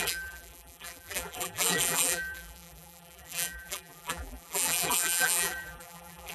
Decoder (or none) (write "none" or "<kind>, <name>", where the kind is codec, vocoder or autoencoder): vocoder, BigVGAN v2